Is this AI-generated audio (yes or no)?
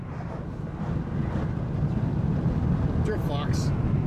no